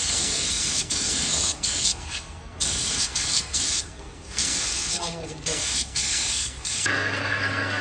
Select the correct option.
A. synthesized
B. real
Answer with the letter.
A